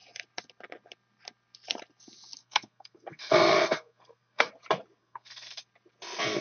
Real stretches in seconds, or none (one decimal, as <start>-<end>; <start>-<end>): 0.0-2.4; 4.5-5.0; 5.6-6.4